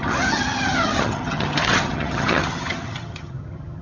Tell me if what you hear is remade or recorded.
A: remade